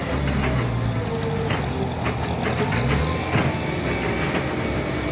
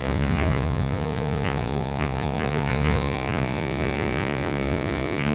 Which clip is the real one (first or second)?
first